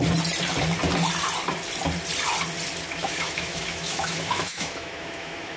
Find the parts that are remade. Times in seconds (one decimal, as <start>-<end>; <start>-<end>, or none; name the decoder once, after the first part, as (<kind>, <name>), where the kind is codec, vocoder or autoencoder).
3.0-5.6 (autoencoder, DAC-VAE)